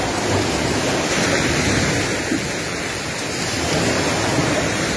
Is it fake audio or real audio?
real